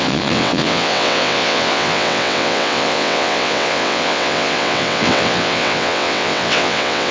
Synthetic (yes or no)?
yes